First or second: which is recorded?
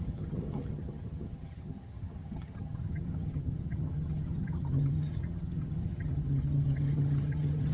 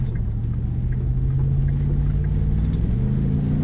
second